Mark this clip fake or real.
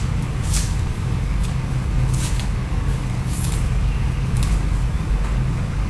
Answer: fake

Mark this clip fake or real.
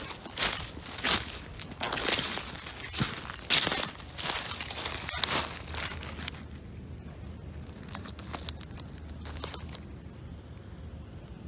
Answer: real